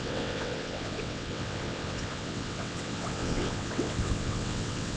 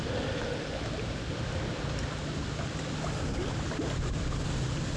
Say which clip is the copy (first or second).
first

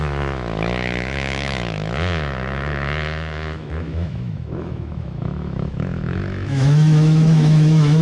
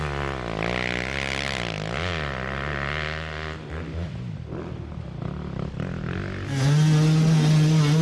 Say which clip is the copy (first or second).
first